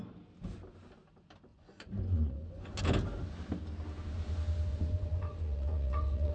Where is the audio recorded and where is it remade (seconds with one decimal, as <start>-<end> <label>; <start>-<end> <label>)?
0.0-1.5 recorded; 1.5-2.8 remade; 2.8-4.7 recorded; 4.7-6.3 remade